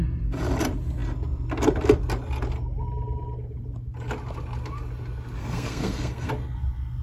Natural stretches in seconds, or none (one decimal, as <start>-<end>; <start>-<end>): 0.0-5.4; 6.3-7.0